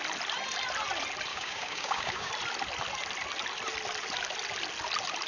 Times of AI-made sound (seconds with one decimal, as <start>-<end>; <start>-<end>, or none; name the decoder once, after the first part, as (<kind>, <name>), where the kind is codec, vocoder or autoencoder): 1.3-2.3 (codec, DAC)